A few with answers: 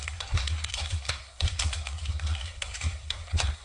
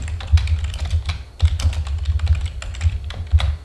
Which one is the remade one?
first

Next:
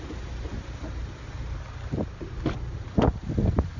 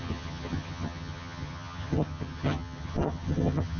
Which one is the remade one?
second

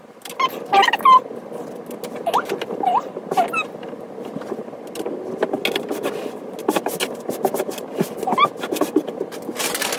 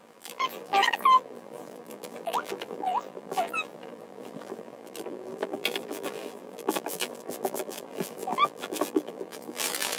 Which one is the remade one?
second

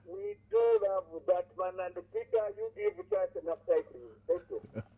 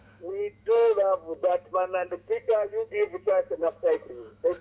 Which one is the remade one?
second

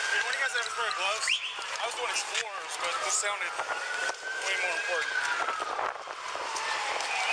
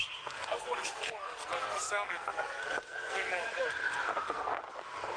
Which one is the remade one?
second